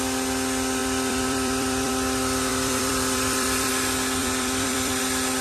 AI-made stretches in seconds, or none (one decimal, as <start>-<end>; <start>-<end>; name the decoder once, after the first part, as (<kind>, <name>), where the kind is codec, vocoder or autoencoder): 0.8-1.9 (vocoder, BigVGAN v2); 2.5-3.7; 4.2-5.0